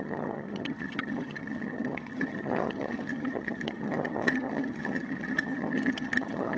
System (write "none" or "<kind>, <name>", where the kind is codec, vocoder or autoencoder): vocoder, HiFi-GAN